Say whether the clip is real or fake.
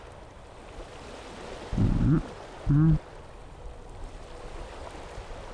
real